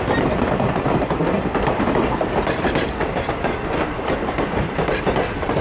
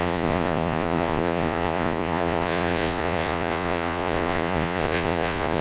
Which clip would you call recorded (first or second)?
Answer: first